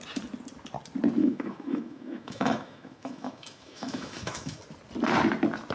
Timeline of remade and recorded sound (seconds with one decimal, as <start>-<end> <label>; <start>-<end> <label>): 0.0-1.2 recorded; 1.2-4.6 remade; 4.6-5.7 recorded